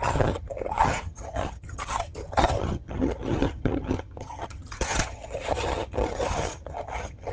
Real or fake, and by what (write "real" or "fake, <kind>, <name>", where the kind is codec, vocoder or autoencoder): fake, vocoder, HiFi-GAN